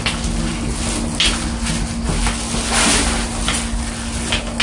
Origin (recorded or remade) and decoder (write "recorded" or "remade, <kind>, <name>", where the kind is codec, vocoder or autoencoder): recorded